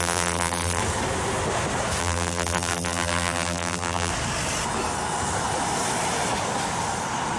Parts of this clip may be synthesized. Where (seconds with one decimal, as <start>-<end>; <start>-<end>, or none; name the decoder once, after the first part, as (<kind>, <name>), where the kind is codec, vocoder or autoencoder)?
0.0-0.8 (vocoder, BigVGAN v2); 2.0-4.1